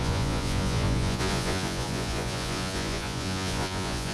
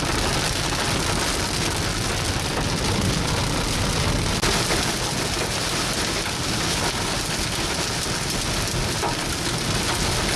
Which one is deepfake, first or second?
first